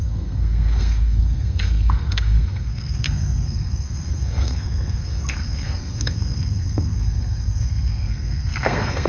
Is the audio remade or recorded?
remade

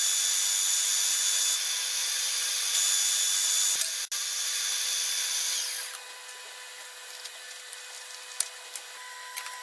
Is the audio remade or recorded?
recorded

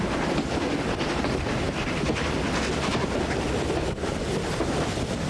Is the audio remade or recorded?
recorded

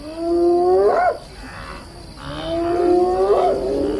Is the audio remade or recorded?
recorded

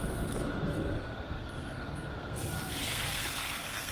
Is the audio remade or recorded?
remade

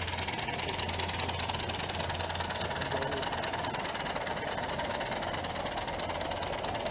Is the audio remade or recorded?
recorded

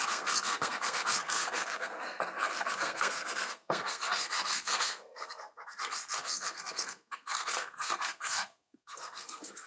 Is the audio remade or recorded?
remade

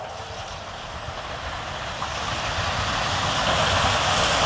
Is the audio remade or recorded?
recorded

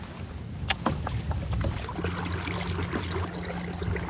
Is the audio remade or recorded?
recorded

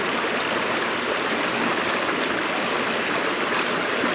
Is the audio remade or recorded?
recorded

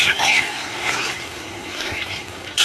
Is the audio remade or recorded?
remade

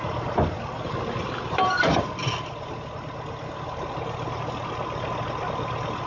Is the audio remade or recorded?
recorded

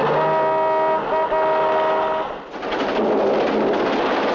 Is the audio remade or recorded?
recorded